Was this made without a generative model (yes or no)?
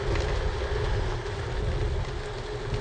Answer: yes